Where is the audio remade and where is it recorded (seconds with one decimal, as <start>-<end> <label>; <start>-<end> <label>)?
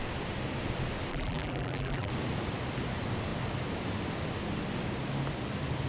0.0-1.1 recorded; 1.1-2.1 remade; 2.1-5.9 recorded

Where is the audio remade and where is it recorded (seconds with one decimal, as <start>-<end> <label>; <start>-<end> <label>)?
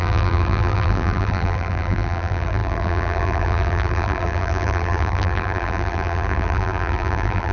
0.0-7.5 remade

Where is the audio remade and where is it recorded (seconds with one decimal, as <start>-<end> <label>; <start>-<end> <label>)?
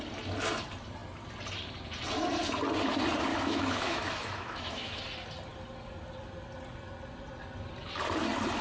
0.0-3.3 recorded; 3.3-5.0 remade; 5.0-8.6 recorded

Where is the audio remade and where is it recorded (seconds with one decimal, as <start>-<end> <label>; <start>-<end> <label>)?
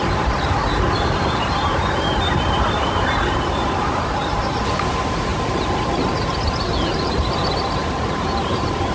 0.0-5.3 remade; 5.3-7.7 recorded; 7.7-8.9 remade